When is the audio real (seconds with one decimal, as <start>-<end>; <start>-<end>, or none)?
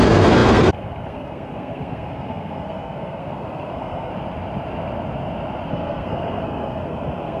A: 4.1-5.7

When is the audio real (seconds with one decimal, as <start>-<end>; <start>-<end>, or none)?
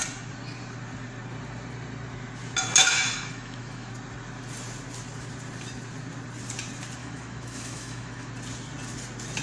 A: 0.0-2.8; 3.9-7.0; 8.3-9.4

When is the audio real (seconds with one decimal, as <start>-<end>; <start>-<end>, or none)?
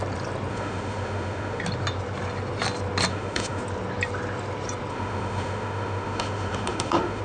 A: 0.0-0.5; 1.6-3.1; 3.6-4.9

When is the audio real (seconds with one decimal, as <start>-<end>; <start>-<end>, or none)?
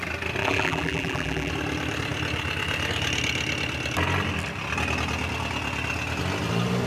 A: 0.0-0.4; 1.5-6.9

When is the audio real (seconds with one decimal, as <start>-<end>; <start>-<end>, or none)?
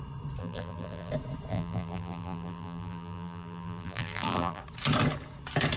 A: 0.0-0.4; 1.1-1.5; 4.6-5.8